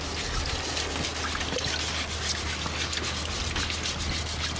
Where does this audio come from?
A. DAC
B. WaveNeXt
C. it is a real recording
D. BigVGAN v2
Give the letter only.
C